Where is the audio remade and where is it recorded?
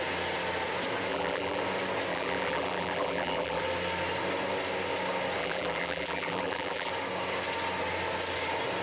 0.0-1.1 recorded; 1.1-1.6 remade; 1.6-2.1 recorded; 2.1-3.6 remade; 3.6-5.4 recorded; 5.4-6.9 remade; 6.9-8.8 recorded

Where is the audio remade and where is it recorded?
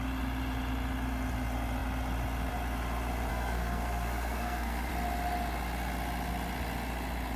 0.0-3.3 recorded; 3.3-4.9 remade; 4.9-7.4 recorded